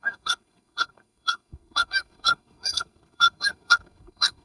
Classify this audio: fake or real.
fake